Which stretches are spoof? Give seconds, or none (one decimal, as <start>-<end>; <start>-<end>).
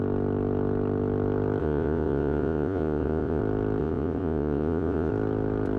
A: 1.6-3.4; 3.8-5.1